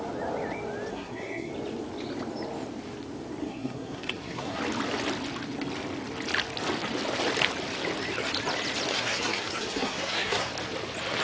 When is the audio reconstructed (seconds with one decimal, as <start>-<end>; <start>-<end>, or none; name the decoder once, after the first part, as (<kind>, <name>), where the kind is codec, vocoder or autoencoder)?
0.9-1.5 (codec, SNAC); 3.4-4.6; 8.9-10.5